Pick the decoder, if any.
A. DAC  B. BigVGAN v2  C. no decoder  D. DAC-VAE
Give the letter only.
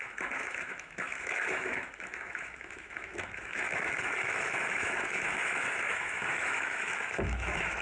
D